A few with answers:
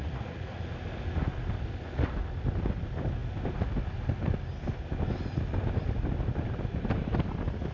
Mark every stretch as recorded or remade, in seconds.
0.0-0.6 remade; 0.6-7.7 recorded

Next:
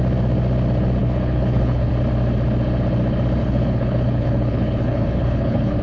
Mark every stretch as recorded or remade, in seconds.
0.0-1.0 recorded; 1.0-1.9 remade; 1.9-3.4 recorded; 3.4-5.8 remade

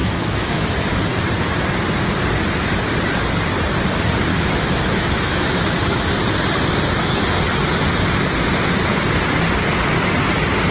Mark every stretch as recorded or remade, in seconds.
0.0-0.7 remade; 0.7-4.3 recorded; 4.3-6.1 remade; 6.1-10.7 recorded